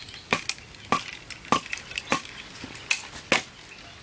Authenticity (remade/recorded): recorded